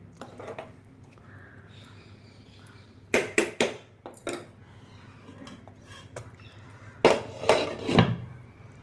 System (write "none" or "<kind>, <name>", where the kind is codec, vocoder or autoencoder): vocoder, BigVGAN v2